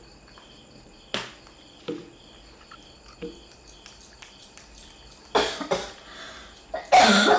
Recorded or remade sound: recorded